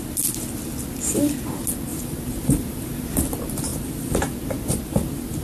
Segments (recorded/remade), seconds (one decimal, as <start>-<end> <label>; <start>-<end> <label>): 0.0-1.9 recorded; 1.9-3.2 remade; 3.2-5.4 recorded